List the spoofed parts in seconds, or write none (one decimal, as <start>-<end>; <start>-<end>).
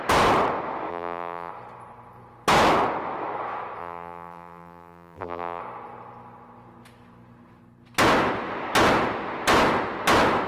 0.9-1.5; 3.8-5.6